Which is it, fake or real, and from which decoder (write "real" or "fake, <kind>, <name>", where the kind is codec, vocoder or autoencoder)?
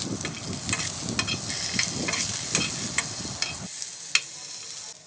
real